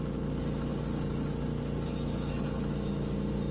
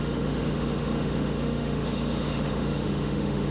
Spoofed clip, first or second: second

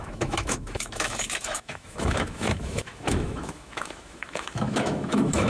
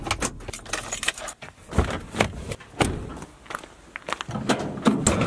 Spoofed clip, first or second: first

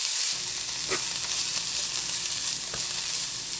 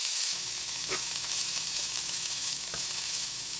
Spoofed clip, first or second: second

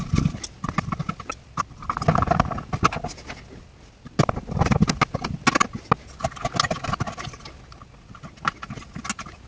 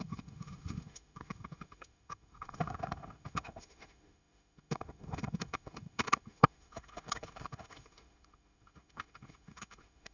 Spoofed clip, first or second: second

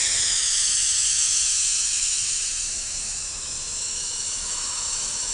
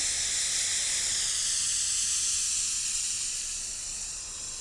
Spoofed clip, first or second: first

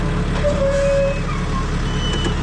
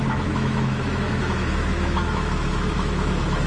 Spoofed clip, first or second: second